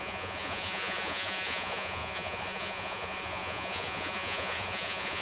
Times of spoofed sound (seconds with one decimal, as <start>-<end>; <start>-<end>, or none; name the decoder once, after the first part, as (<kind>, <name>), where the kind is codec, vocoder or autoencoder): 0.0-5.2 (vocoder, Vocos)